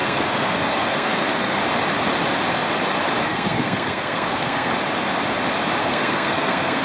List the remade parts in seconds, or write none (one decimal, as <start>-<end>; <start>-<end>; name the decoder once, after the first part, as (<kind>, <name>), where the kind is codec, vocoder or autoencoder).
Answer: 0.0-1.6 (codec, SNAC); 3.2-4.7; 5.8-6.8